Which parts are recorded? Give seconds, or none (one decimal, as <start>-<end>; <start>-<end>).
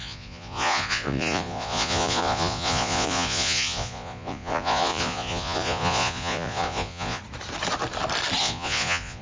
7.2-8.4